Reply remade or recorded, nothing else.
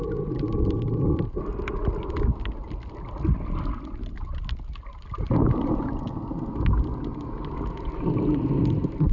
recorded